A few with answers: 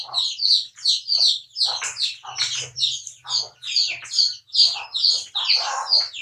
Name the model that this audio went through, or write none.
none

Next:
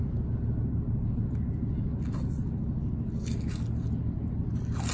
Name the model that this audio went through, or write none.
none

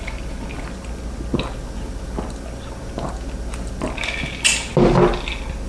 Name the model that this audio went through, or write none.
none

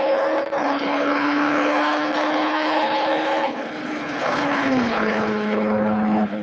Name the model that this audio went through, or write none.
codec, HILCodec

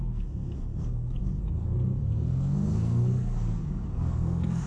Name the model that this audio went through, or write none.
codec, SNAC